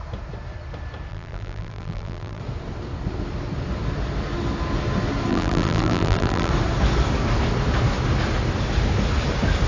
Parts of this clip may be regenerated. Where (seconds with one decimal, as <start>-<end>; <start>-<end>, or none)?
1.1-2.4; 5.3-6.5